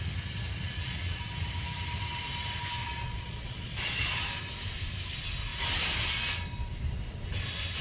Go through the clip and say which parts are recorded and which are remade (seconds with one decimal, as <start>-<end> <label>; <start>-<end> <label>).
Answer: 0.0-0.6 recorded; 0.6-1.2 remade; 1.2-2.8 recorded; 2.8-4.1 remade; 4.1-7.8 recorded